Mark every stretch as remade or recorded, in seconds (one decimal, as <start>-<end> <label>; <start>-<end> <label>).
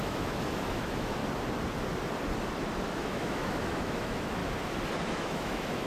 0.0-1.2 remade; 1.2-2.9 recorded; 2.9-4.4 remade; 4.4-5.1 recorded; 5.1-5.9 remade